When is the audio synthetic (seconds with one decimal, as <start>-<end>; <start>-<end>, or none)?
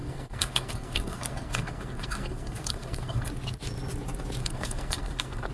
0.0-3.3; 4.4-5.5